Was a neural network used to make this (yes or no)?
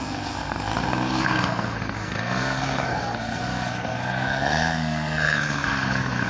yes